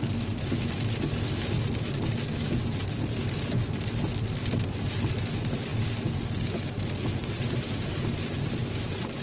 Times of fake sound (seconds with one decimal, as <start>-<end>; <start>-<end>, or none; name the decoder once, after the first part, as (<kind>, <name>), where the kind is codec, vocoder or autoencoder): none